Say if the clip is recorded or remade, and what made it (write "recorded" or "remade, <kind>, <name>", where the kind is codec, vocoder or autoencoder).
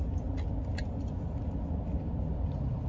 recorded